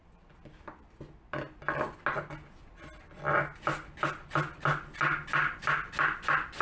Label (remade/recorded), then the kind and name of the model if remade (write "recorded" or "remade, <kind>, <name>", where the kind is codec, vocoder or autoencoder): recorded